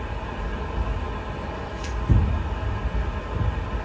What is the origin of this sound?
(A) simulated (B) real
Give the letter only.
B